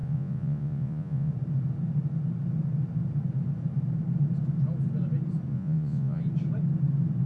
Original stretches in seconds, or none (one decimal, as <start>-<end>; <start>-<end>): 1.3-5.5; 6.2-7.3